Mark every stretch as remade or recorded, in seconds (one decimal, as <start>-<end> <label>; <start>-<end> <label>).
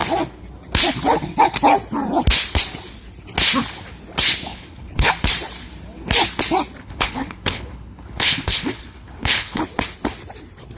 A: 0.0-4.5 recorded; 4.5-5.1 remade; 5.1-6.8 recorded; 6.8-9.6 remade; 9.6-10.8 recorded